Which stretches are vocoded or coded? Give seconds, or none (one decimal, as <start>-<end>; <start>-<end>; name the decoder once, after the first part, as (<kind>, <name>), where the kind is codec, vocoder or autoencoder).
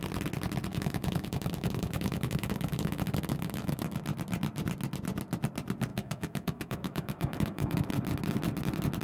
0.7-4.0 (autoencoder, DAC-VAE); 5.9-7.9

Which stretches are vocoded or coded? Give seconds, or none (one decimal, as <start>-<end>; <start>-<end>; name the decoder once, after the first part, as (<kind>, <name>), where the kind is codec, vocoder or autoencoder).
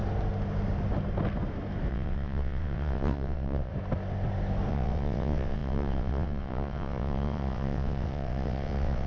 1.9-3.7 (vocoder, WaveNeXt); 4.7-9.1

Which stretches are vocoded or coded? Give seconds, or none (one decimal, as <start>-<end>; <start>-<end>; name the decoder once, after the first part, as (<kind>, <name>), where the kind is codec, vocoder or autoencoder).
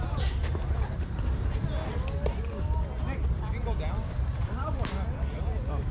4.0-5.4 (vocoder, BigVGAN v2)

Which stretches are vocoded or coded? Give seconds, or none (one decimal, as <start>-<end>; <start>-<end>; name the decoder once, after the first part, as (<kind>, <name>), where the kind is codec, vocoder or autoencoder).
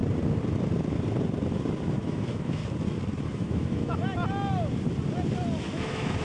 1.9-2.6 (autoencoder, DAC-VAE); 3.2-4.0; 5.6-6.2